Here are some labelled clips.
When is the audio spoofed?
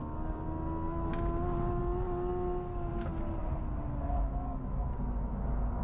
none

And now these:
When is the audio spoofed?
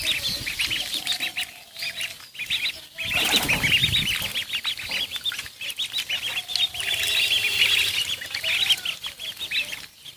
none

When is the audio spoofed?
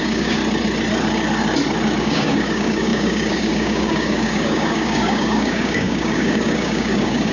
0.0-0.4 (codec, DAC); 2.0-7.3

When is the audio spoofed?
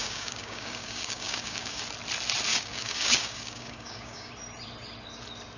0.0-1.8 (codec, DAC); 2.5-4.3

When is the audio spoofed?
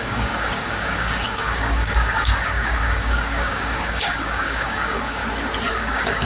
0.0-5.2 (codec, DAC); 5.7-6.3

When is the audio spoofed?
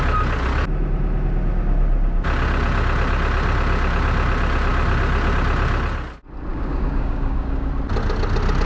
6.5-7.7 (codec, DAC)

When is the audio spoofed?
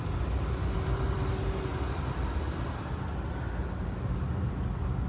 none